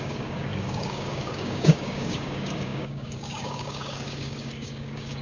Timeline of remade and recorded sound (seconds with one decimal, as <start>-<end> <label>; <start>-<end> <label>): 0.0-5.2 remade